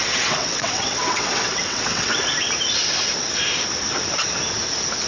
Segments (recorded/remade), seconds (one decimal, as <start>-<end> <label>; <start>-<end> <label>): 0.0-2.2 remade; 2.2-5.1 recorded